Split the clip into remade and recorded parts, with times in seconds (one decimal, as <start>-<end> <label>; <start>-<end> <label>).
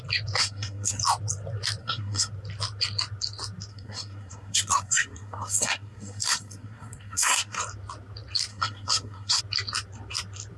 0.0-0.4 recorded; 0.4-1.0 remade; 1.0-1.8 recorded; 1.8-2.3 remade; 2.3-3.7 recorded; 3.7-7.6 remade; 7.6-8.5 recorded; 8.5-9.4 remade; 9.4-10.6 recorded